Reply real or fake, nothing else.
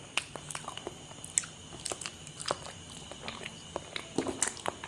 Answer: real